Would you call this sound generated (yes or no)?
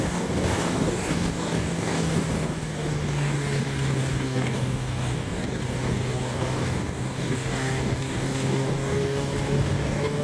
yes